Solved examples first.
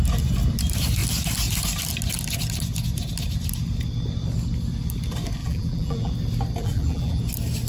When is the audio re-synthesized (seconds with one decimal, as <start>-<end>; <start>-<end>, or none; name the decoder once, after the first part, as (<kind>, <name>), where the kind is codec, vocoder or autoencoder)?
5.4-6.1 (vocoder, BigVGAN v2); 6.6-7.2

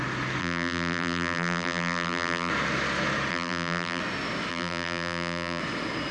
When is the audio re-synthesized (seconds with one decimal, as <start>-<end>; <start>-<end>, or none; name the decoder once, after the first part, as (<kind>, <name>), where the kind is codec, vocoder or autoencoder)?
0.4-2.5 (vocoder, BigVGAN v2); 3.3-4.0; 4.5-5.6

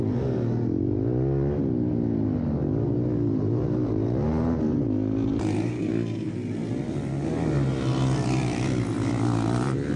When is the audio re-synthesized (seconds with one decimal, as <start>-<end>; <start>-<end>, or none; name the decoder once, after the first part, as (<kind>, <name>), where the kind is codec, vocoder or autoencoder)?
5.3-5.9 (vocoder, BigVGAN v2)

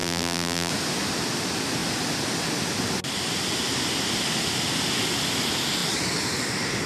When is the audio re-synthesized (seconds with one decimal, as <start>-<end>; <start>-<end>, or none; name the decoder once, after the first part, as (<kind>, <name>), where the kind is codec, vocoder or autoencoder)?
0.0-0.7 (vocoder, BigVGAN v2)